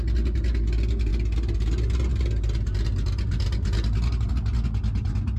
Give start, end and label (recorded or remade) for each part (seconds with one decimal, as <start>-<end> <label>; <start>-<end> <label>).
0.0-5.4 recorded